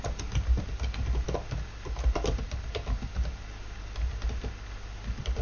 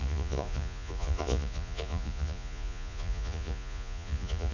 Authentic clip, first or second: first